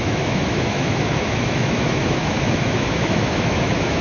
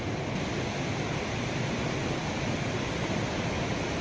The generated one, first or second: first